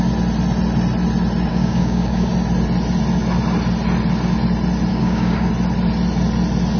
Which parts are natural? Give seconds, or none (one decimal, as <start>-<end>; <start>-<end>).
0.0-1.5; 2.3-4.9; 5.5-6.8